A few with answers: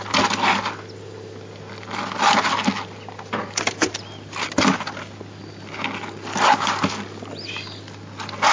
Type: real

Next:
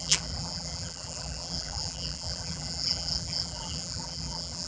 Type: fake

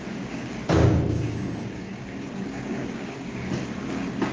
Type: fake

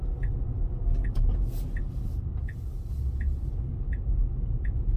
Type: real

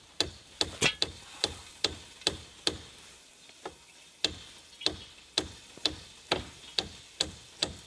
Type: real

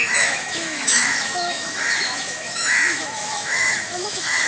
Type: fake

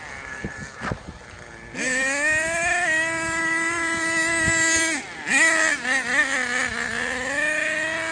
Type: real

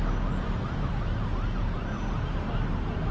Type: real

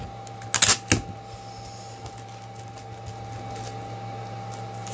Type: real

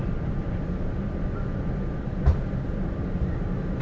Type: real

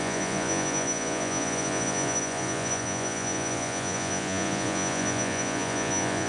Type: fake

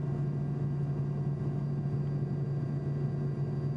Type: real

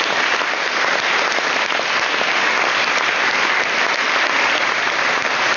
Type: real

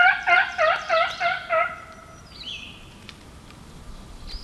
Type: real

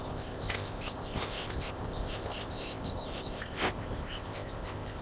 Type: fake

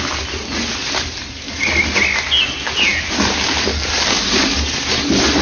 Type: real